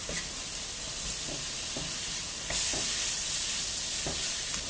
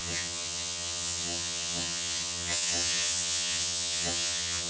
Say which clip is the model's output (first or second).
second